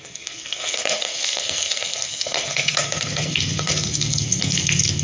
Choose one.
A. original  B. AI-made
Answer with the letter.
B